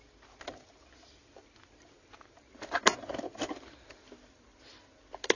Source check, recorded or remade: recorded